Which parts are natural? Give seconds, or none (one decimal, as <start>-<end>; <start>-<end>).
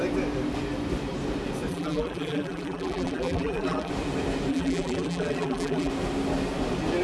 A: 0.0-1.7; 3.9-4.5; 5.9-7.0